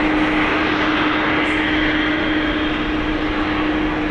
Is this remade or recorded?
recorded